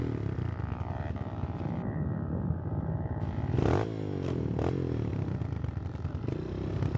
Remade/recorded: recorded